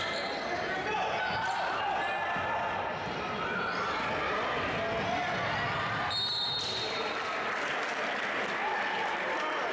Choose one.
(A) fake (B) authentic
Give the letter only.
B